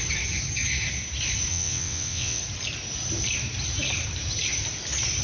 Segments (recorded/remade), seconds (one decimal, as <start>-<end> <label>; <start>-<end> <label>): 0.0-1.5 recorded; 1.5-2.4 remade; 2.4-5.2 recorded